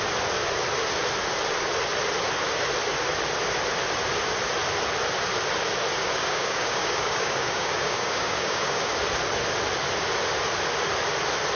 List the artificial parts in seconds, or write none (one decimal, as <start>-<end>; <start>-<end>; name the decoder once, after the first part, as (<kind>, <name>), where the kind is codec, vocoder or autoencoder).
6.0-8.9 (codec, DAC)